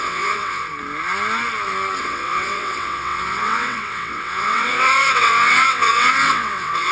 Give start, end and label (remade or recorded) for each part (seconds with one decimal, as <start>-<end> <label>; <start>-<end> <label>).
0.0-0.7 remade; 0.7-2.0 recorded; 2.0-6.9 remade